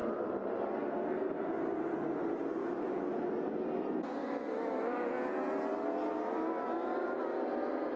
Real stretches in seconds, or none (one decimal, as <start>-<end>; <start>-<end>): 0.0-2.6; 3.2-4.2; 5.1-8.0